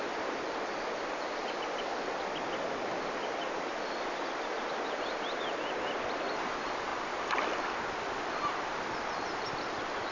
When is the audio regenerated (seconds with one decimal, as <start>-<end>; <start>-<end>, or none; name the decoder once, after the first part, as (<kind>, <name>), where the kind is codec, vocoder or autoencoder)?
none